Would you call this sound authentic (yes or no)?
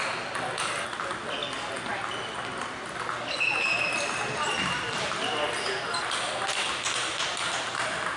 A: yes